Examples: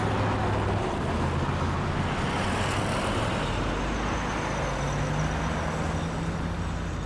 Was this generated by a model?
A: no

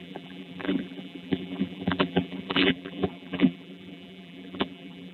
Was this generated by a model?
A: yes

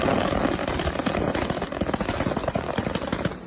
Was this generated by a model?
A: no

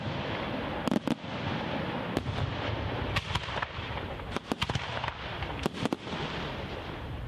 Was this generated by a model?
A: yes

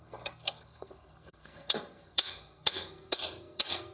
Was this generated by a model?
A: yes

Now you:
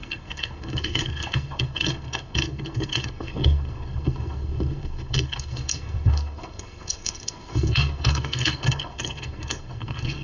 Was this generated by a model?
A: yes